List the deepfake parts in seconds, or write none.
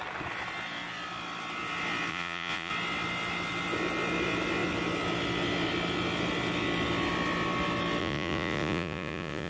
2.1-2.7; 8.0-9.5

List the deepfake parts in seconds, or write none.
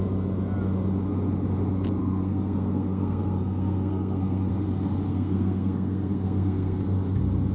2.0-4.5; 5.1-6.8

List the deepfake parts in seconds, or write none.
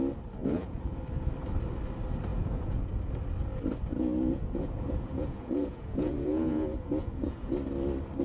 0.4-1.0; 2.3-2.9; 3.9-7.5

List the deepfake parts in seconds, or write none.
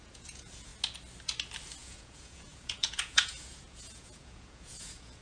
0.0-0.7; 1.8-5.2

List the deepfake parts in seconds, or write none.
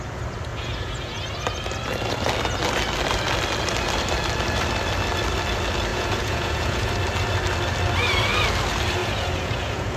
0.5-1.2; 5.9-6.9; 9.0-10.0